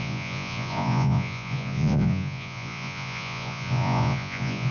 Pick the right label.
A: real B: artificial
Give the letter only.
B